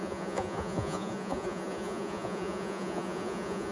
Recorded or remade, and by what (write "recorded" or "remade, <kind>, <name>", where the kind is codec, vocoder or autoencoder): remade, vocoder, Vocos